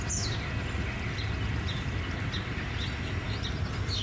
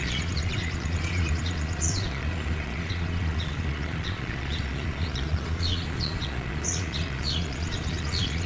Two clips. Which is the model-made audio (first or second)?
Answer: second